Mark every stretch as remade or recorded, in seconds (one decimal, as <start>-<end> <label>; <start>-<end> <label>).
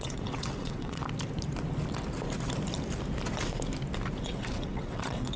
0.0-1.0 remade; 1.0-4.2 recorded; 4.2-5.4 remade